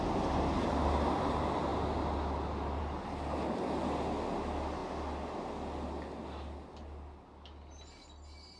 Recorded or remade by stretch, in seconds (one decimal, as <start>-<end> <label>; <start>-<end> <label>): 0.0-8.6 recorded